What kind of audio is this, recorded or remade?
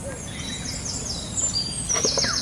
recorded